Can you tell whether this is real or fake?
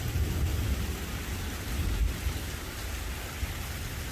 real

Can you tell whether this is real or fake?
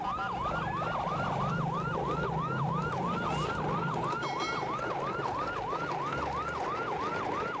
real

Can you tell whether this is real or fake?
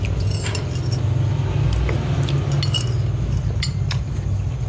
real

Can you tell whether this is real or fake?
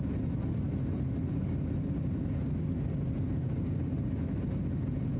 real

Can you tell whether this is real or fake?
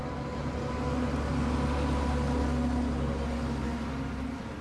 real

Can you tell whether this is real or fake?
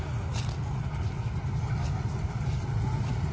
real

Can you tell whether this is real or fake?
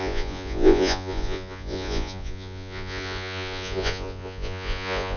fake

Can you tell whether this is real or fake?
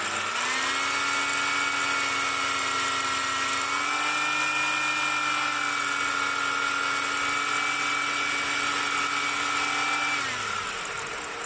real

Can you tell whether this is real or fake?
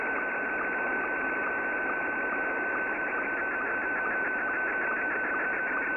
real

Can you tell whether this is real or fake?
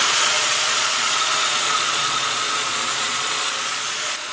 fake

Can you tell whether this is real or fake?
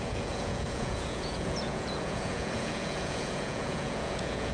fake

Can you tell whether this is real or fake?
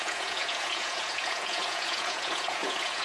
fake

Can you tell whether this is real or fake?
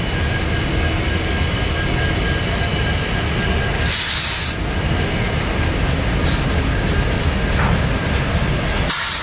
real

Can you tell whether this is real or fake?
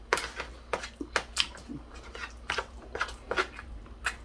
real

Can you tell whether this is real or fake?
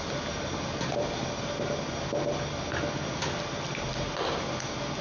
real